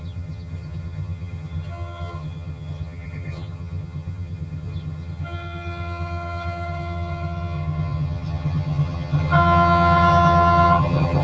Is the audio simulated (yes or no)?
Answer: yes